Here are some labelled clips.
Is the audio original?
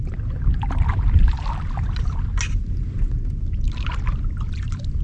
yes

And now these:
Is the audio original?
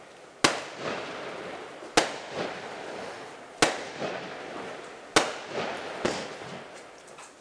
yes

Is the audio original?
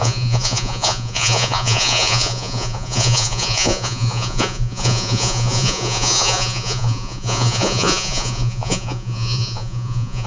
no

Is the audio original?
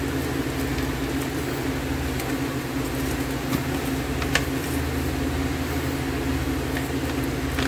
yes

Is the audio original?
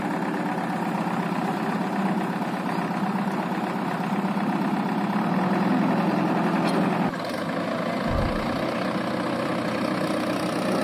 yes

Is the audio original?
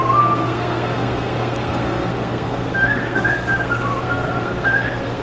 no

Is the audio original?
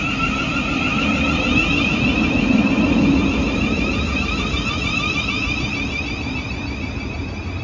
yes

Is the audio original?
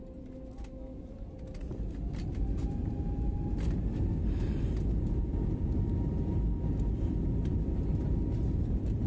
yes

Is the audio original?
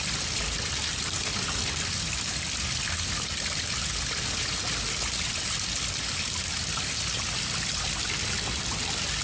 yes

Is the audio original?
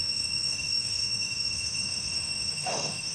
no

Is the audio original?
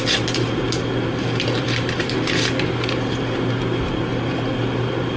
yes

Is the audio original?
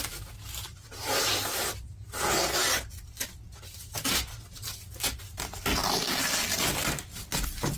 yes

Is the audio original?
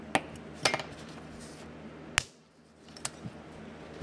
yes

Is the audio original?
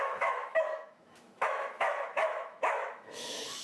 no